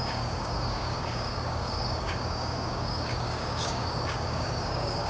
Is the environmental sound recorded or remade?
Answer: remade